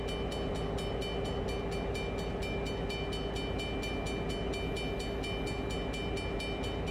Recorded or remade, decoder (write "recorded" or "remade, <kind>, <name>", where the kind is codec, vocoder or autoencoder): recorded